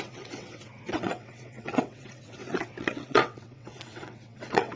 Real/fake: fake